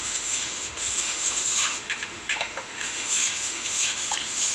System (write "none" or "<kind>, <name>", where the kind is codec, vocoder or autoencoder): autoencoder, DAC-VAE